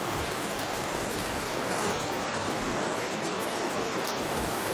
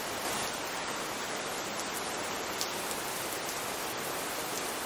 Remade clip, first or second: first